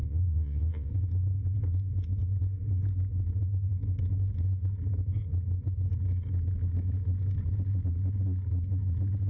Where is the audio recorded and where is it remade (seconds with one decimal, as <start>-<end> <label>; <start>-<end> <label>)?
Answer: 0.0-0.9 remade; 0.9-9.3 recorded